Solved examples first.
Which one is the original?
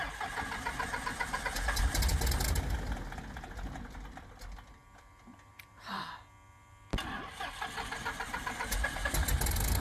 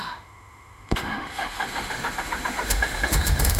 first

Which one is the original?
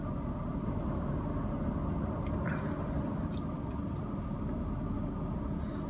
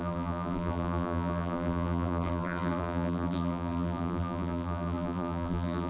first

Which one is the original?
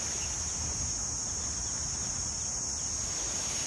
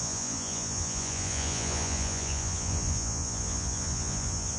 first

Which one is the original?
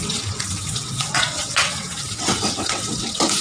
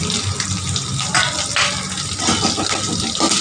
second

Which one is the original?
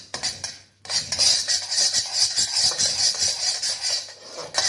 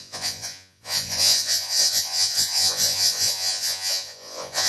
first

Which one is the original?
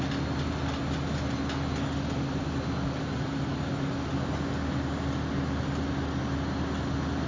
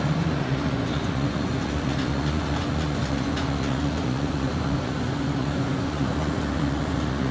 first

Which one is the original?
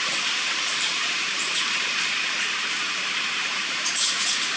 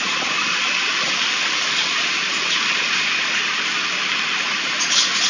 second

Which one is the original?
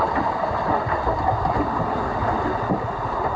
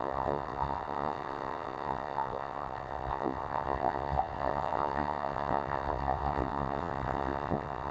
first